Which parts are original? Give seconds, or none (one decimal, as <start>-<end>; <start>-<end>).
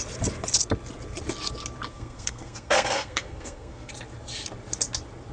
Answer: 0.0-1.9; 3.9-5.3